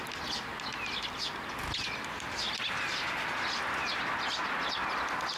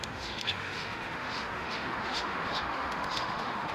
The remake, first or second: second